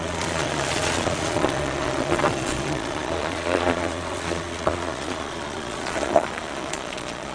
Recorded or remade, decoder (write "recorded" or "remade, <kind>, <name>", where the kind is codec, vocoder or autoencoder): remade, vocoder, Vocos